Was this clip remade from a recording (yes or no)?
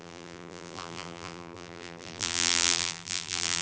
yes